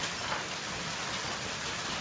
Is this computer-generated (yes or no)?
no